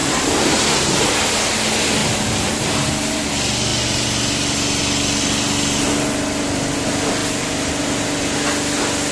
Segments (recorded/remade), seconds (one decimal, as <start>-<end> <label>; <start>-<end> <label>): 0.0-1.1 remade; 1.1-2.0 recorded; 2.0-3.3 remade; 3.3-9.1 recorded